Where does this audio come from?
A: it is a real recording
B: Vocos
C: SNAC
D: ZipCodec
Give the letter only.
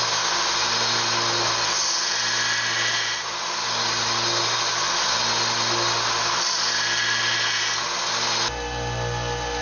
A